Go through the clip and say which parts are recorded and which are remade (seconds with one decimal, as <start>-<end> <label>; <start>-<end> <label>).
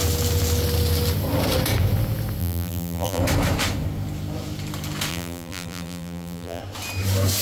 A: 0.0-2.4 recorded; 2.4-3.2 remade; 3.2-5.1 recorded; 5.1-6.6 remade; 6.6-7.4 recorded